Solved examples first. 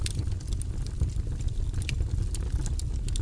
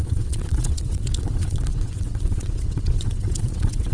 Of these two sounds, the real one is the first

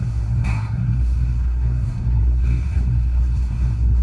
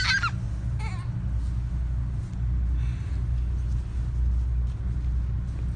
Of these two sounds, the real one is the second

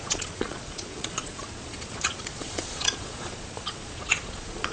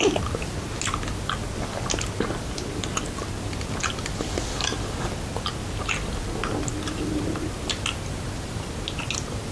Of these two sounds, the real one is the second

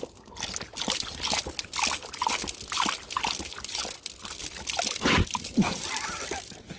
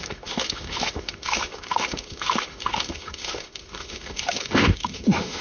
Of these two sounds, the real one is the first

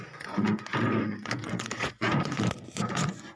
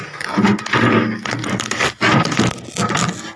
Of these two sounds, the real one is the second